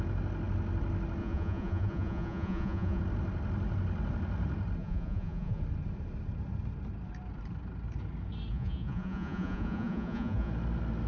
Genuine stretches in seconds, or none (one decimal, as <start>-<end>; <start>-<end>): 0.0-1.2; 3.0-4.8; 5.6-8.5; 10.5-11.1